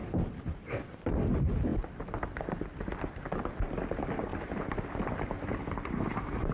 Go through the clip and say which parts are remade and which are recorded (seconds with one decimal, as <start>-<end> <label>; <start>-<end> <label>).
0.0-1.1 remade; 1.1-4.3 recorded; 4.3-6.5 remade

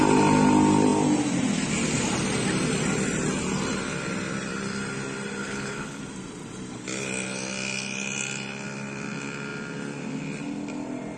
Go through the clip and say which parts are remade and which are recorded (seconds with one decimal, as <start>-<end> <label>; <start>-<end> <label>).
0.0-5.4 recorded; 5.4-6.0 remade; 6.0-11.2 recorded